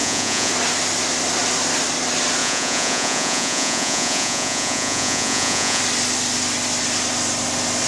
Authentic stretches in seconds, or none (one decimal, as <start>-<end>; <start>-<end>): 0.5-2.4; 5.8-7.9